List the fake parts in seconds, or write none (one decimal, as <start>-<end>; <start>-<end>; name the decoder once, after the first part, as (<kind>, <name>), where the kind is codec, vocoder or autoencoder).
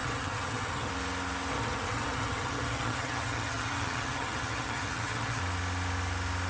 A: 0.0-0.9 (vocoder, HiFi-GAN); 1.5-5.4